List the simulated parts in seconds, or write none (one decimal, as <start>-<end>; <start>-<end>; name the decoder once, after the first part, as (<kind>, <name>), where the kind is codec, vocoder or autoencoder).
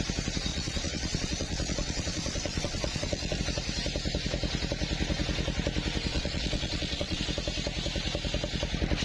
0.5-3.4 (vocoder, Vocos); 6.1-7.2